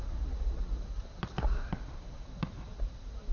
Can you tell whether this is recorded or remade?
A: recorded